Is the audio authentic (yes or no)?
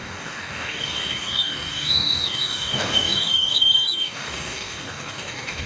no